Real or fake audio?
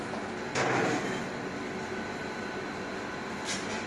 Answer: real